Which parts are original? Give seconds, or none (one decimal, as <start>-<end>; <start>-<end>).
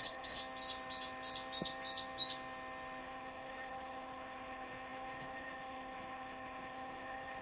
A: 0.4-3.0